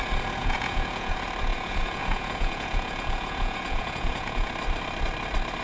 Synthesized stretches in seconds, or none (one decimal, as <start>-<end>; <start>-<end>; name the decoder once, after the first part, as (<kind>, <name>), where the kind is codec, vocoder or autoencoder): 0.4-1.1 (vocoder, Vocos); 1.5-4.5